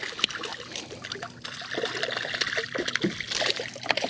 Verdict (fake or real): real